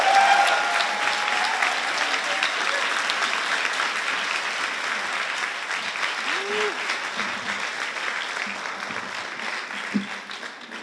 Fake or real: real